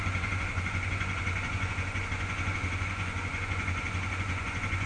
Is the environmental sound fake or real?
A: fake